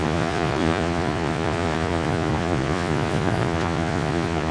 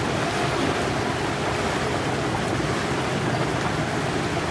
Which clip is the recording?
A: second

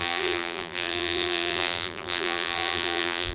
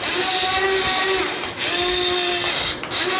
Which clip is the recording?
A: second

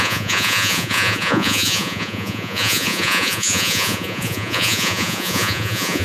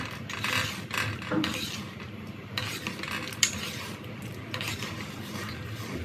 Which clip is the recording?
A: second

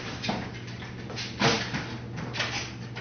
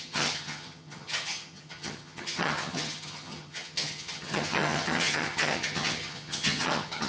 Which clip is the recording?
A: first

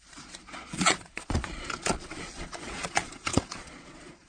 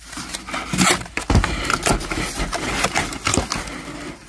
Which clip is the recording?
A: second